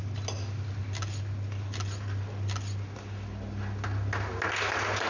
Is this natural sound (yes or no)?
yes